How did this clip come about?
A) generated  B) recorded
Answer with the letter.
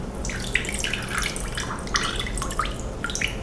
B